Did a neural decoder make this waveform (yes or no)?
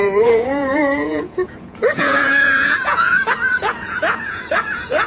yes